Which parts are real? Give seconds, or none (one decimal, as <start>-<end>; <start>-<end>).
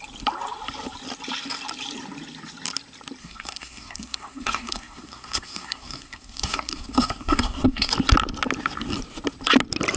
0.0-3.2; 7.9-10.0